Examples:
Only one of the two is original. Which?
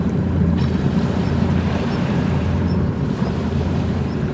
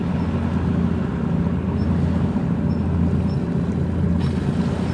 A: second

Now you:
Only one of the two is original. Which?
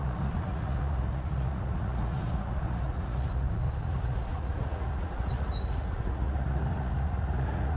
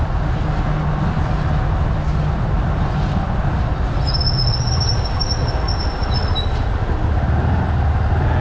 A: second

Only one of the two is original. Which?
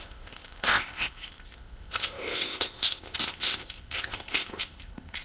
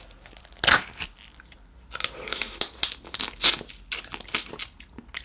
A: second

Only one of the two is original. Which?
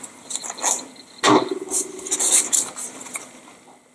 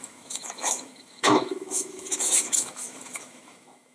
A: first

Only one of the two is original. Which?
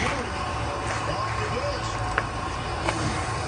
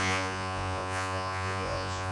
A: first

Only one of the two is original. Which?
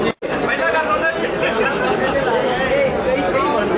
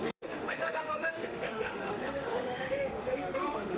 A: first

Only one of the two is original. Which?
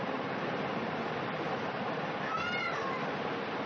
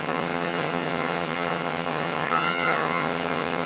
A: first